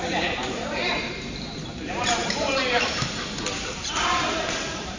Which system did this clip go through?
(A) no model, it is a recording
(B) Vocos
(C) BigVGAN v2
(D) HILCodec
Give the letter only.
C